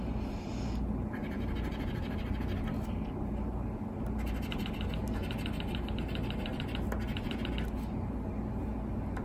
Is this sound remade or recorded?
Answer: recorded